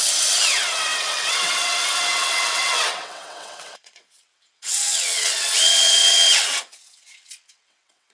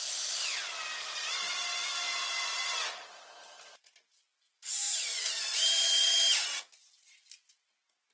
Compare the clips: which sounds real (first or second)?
second